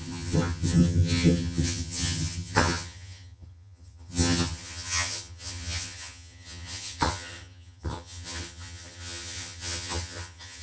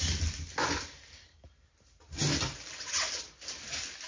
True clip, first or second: second